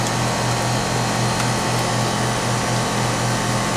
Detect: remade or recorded recorded